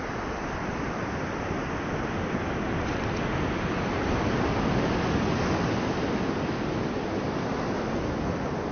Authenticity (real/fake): real